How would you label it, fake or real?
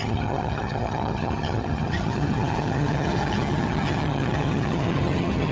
fake